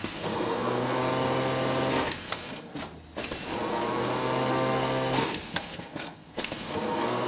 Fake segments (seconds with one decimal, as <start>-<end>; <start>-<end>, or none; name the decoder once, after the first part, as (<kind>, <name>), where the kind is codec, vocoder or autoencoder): 0.0-1.0 (codec, SNAC); 1.9-2.7; 4.5-7.3